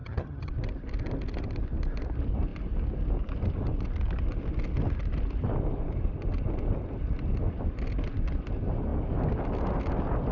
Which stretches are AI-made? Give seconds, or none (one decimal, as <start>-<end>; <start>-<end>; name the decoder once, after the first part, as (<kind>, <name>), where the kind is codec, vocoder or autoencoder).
0.0-0.5 (vocoder, HiFi-GAN)

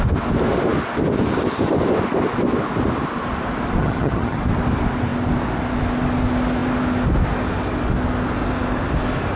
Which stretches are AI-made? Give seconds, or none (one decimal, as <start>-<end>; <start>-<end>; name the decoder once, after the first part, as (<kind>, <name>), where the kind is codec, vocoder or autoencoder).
3.8-4.4 (vocoder, HiFi-GAN)

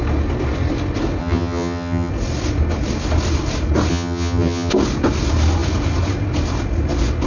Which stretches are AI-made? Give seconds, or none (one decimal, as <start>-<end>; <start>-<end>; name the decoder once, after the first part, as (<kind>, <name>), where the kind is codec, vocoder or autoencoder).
1.2-2.1 (vocoder, HiFi-GAN); 3.9-4.7